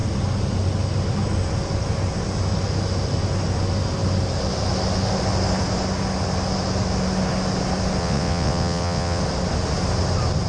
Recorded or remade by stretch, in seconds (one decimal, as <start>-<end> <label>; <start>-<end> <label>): 0.0-8.0 recorded; 8.0-9.2 remade; 9.2-10.5 recorded